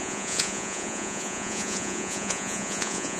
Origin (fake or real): fake